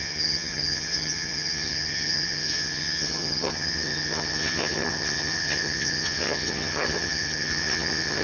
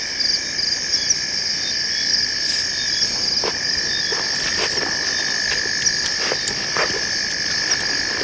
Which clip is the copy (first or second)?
first